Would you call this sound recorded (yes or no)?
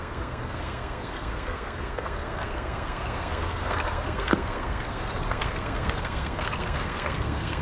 no